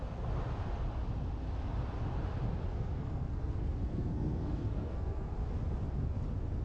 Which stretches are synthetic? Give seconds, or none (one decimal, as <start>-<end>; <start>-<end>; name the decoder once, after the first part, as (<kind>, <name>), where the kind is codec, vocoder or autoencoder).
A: 2.7-5.3 (codec, SNAC)